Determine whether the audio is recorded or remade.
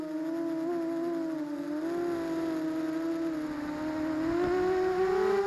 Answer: recorded